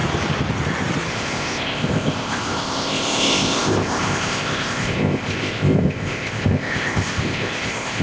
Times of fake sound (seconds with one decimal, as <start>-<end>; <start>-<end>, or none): 1.1-8.0